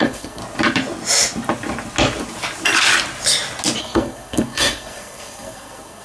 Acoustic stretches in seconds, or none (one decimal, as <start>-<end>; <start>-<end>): 0.4-3.8